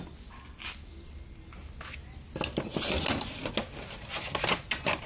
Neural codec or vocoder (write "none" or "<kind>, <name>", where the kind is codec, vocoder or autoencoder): none